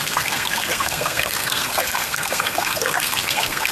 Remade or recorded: remade